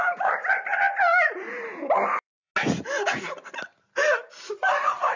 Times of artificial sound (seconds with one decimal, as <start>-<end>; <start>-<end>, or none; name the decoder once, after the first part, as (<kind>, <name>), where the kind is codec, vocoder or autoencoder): 0.0-2.5 (vocoder, BigVGAN v2); 3.2-5.2

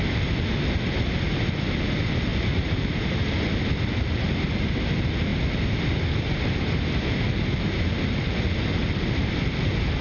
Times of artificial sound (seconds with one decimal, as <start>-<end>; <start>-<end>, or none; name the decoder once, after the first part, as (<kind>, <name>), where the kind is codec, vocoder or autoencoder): 2.3-3.2 (vocoder, BigVGAN v2)

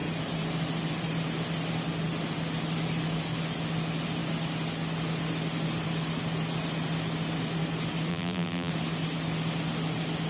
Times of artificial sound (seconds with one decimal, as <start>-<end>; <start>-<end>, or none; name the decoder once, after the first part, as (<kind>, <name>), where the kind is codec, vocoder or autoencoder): 8.1-8.7 (vocoder, BigVGAN v2)

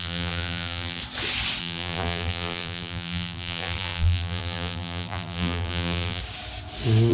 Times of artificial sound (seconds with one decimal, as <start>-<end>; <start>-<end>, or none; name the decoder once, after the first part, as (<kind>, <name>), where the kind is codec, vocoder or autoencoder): 0.0-1.0 (vocoder, BigVGAN v2); 1.6-6.2